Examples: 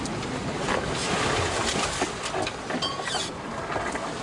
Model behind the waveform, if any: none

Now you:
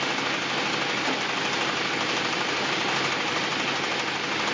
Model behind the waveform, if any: none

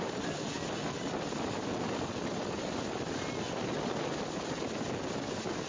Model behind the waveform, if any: none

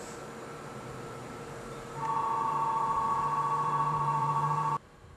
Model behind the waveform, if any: vocoder, BigVGAN v2